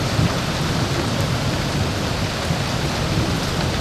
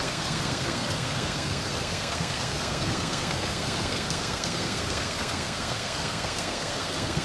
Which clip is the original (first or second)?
first